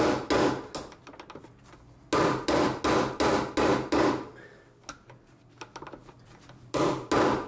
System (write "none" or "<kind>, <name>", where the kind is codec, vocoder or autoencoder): none